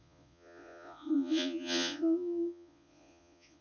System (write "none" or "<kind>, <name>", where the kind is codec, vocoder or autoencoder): vocoder, Vocos